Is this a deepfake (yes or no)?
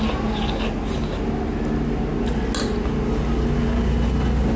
no